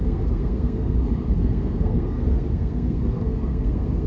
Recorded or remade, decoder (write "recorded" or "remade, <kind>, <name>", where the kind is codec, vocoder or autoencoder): remade, codec, SNAC